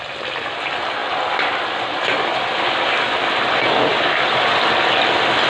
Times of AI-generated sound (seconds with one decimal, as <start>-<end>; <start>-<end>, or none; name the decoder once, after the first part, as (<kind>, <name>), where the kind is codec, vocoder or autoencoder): none

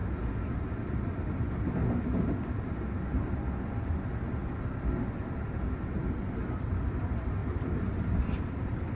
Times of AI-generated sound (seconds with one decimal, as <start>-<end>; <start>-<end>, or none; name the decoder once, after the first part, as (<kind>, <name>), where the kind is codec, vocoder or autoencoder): 7.4-8.4 (vocoder, BigVGAN v2)